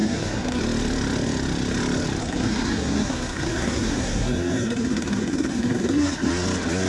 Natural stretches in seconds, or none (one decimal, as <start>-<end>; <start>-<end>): 0.6-2.2; 6.3-6.9